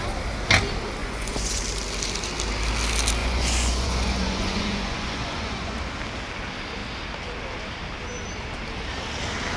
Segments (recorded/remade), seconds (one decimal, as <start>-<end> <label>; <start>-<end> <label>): 0.0-1.0 recorded; 1.0-1.6 remade; 1.6-3.2 recorded; 3.2-5.8 remade; 5.8-9.6 recorded